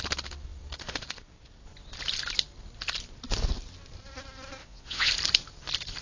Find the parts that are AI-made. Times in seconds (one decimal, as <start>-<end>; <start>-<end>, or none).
4.6-5.1